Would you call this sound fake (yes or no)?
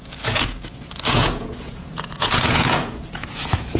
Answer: yes